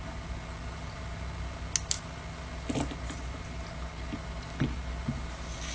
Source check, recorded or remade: recorded